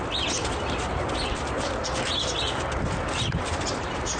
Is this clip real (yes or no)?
yes